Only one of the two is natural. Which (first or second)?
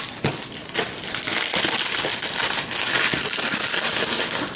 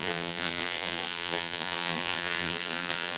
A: first